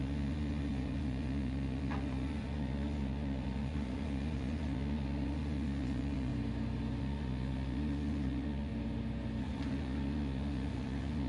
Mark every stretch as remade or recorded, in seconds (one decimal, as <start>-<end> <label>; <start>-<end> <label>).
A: 0.0-6.3 remade; 6.3-7.0 recorded; 7.0-8.7 remade; 8.7-9.4 recorded; 9.4-11.3 remade